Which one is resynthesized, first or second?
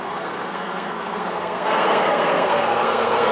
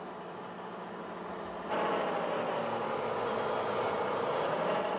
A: first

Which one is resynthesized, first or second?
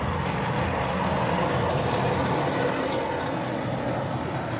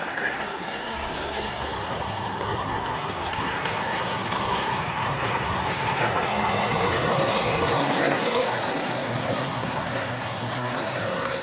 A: second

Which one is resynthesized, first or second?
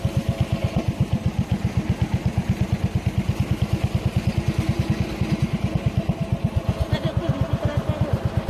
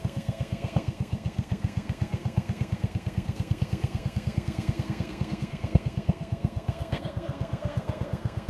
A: second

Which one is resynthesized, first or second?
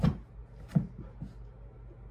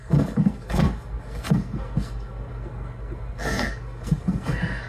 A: second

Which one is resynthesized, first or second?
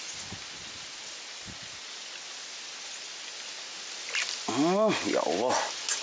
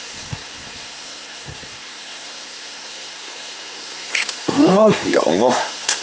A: second